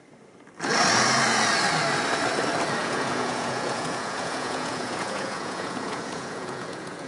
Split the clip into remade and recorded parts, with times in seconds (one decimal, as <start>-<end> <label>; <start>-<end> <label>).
0.0-2.8 recorded; 2.8-7.1 remade

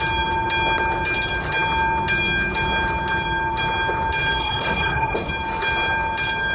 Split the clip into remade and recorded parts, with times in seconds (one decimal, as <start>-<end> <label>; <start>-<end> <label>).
0.0-4.4 recorded; 4.4-5.3 remade; 5.3-6.5 recorded

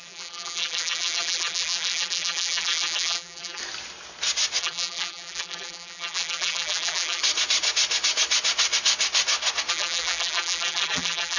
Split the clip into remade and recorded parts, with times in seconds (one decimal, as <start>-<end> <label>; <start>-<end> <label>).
0.0-3.6 remade; 3.6-4.6 recorded; 4.6-7.2 remade; 7.2-9.7 recorded; 9.7-11.4 remade

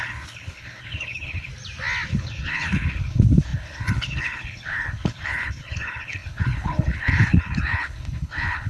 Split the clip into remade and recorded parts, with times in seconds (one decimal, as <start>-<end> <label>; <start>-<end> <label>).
0.0-1.5 remade; 1.5-2.1 recorded; 2.1-8.7 remade

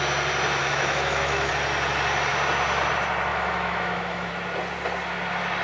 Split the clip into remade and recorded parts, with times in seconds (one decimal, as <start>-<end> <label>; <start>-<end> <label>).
0.0-0.6 recorded; 0.6-1.5 remade; 1.5-3.3 recorded; 3.3-4.3 remade; 4.3-5.6 recorded

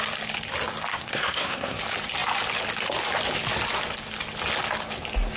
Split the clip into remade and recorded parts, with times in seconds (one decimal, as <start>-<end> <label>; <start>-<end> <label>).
0.0-0.9 recorded; 0.9-1.8 remade; 1.8-5.4 recorded

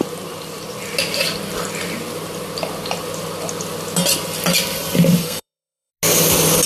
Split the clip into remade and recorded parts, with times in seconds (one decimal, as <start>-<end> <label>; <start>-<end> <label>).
0.0-5.2 recorded; 5.2-5.9 remade; 5.9-6.7 recorded